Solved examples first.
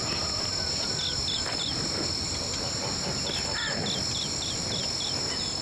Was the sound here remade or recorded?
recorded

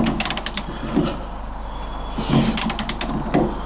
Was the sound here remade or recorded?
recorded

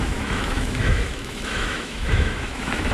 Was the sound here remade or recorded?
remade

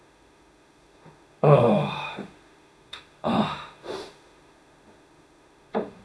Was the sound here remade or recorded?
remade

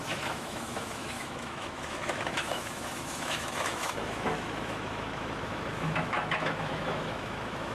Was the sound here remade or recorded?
remade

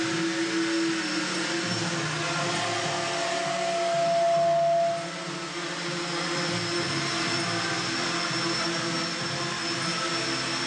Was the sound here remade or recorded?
recorded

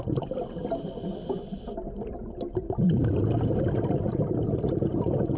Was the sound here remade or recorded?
recorded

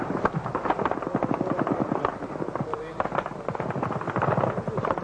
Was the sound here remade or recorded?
recorded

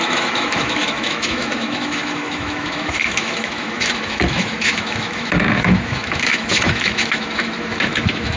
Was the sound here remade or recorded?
remade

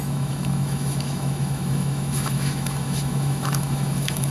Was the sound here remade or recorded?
remade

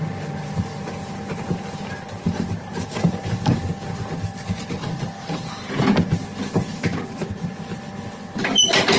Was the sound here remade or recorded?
recorded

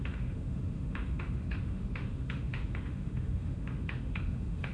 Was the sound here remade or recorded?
remade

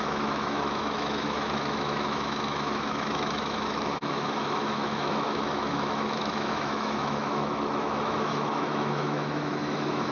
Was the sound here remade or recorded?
remade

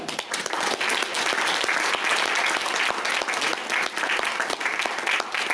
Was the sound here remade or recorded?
recorded